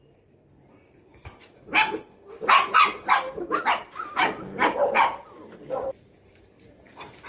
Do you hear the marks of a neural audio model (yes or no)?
no